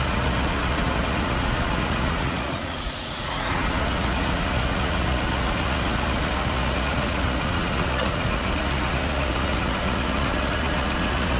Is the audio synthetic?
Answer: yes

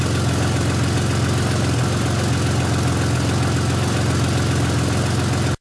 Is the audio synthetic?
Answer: no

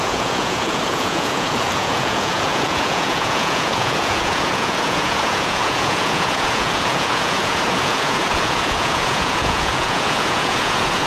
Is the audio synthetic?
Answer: yes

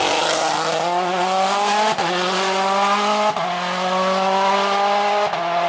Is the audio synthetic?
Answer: no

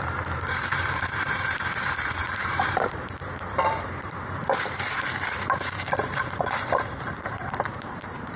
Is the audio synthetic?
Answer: yes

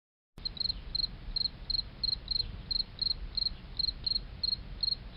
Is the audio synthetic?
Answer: no